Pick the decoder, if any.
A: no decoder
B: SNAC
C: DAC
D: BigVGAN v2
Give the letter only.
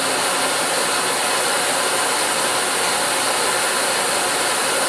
A